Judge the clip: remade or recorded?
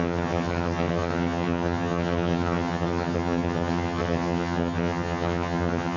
remade